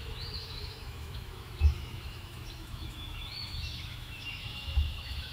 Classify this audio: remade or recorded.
remade